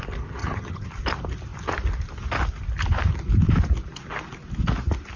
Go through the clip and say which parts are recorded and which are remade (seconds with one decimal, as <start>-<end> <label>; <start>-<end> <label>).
0.0-0.4 recorded; 0.4-0.9 remade; 0.9-5.2 recorded